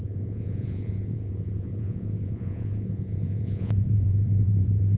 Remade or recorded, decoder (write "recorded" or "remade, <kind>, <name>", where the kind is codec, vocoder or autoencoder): remade, vocoder, Vocos